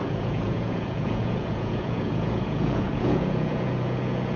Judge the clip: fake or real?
fake